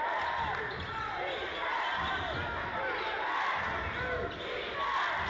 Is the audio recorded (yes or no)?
yes